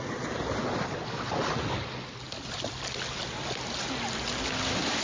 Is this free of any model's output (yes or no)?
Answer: yes